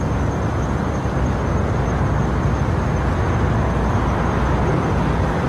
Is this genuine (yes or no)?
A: yes